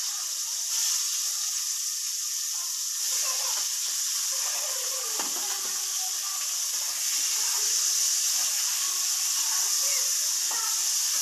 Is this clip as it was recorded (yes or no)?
yes